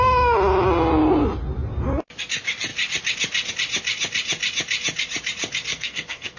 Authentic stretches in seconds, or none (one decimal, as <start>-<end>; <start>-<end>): 0.0-5.7

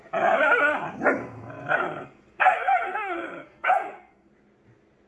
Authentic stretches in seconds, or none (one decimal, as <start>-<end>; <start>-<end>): 0.0-1.2; 4.3-5.1

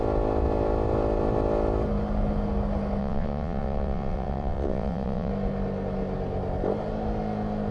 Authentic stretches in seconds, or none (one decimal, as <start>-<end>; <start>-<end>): 0.0-3.0; 5.3-7.7

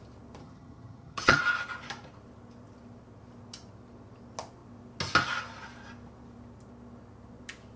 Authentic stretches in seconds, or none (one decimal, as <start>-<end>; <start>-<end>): 0.0-0.4; 1.4-7.8